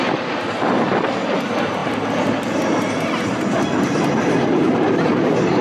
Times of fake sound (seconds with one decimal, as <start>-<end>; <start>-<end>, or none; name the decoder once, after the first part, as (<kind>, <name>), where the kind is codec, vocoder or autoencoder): 1.8-5.6 (vocoder, BigVGAN v2)